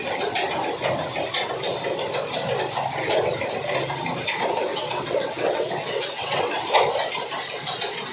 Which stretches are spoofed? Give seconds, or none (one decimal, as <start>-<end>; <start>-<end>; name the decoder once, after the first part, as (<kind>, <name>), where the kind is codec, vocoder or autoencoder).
4.7-6.6 (vocoder, WaveNeXt)